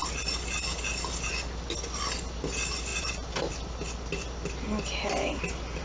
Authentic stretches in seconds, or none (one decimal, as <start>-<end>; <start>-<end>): 0.0-2.9; 3.5-5.8